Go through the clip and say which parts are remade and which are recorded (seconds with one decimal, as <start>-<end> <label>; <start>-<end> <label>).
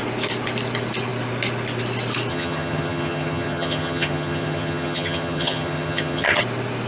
0.0-2.3 recorded; 2.3-6.4 remade; 6.4-6.9 recorded